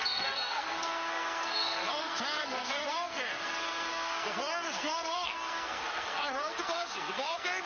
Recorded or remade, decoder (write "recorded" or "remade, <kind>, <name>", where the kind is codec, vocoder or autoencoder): remade, codec, SNAC